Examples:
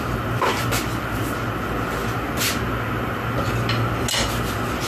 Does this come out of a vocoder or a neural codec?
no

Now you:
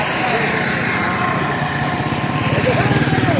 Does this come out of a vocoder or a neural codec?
no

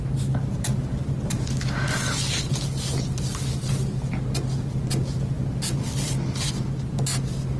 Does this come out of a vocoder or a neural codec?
no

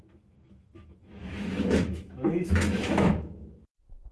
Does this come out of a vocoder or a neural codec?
yes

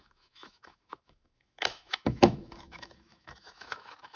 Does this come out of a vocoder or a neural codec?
yes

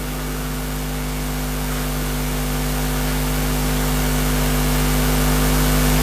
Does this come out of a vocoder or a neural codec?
no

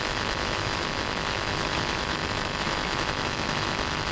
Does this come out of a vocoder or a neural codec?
yes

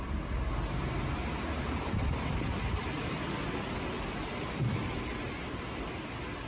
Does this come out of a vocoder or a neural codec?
no